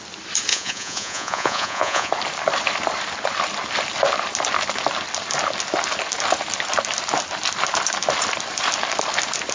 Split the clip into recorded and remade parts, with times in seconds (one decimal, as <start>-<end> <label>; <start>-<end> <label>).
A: 0.0-0.5 recorded; 0.5-2.1 remade; 2.1-9.5 recorded